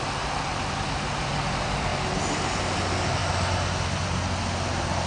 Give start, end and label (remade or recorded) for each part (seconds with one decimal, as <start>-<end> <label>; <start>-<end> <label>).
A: 0.0-5.1 recorded